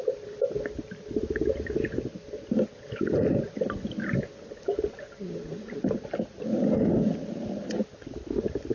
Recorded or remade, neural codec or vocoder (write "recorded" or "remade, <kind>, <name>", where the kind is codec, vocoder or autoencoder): recorded